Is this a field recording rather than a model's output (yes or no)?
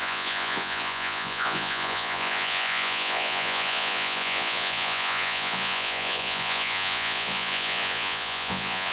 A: no